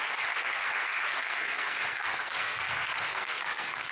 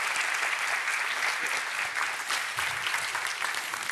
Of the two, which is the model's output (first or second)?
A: first